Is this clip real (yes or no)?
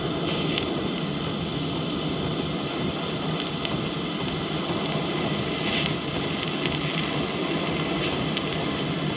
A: yes